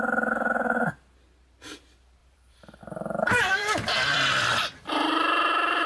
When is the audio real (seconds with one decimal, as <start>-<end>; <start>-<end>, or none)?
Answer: 0.0-2.2; 4.9-5.9